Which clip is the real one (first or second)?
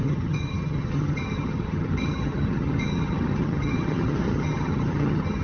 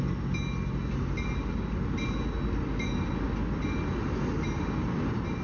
second